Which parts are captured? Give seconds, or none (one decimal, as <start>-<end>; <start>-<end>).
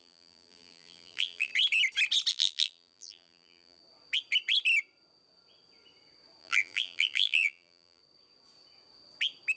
1.5-2.3; 3.8-6.4; 8.0-9.6